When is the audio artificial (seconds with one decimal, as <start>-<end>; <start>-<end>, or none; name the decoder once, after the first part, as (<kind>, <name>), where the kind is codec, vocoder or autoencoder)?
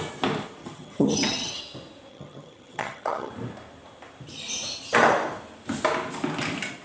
0.6-1.6 (vocoder, HiFi-GAN); 2.1-3.3